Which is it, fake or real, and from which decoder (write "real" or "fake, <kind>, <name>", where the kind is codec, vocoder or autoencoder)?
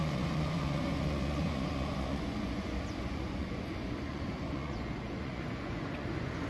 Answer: fake, vocoder, Vocos